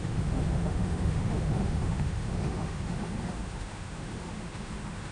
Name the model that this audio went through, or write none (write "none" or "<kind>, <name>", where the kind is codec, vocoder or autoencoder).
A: autoencoder, DAC-VAE